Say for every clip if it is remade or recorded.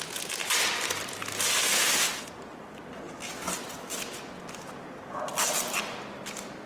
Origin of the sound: recorded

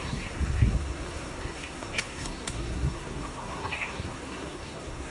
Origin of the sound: remade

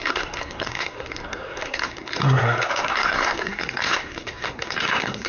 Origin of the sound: remade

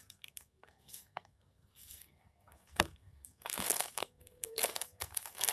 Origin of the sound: remade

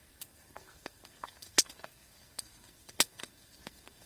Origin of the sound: remade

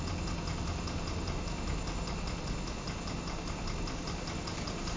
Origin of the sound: recorded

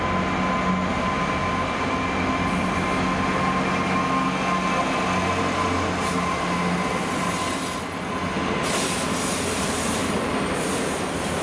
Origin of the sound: recorded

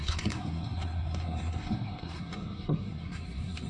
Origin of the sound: remade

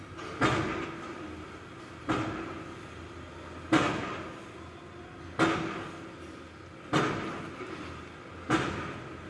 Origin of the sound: recorded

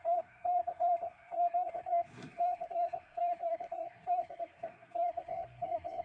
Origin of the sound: remade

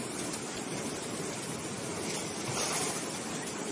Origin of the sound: recorded